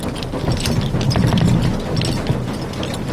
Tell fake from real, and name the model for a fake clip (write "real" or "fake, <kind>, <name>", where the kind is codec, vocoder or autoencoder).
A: real